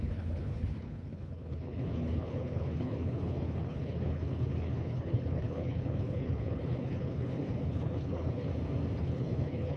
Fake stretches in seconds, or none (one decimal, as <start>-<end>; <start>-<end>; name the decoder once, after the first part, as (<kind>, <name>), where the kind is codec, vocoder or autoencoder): 0.0-8.5 (codec, HILCodec); 9.0-9.8